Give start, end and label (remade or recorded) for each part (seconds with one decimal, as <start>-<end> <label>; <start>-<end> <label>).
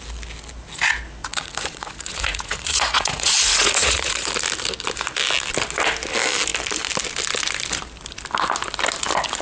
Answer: 0.0-1.2 recorded; 1.2-4.3 remade; 4.3-9.4 recorded